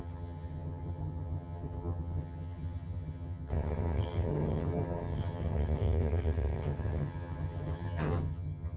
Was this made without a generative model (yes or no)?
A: no